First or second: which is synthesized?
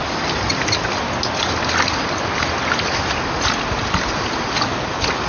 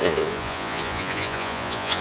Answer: second